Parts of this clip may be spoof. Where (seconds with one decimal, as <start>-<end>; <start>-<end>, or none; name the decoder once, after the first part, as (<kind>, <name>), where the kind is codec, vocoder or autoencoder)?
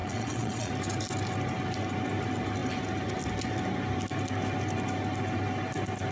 0.0-0.7 (vocoder, Vocos)